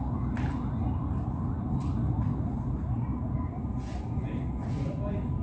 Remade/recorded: recorded